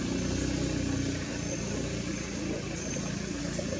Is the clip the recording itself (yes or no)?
yes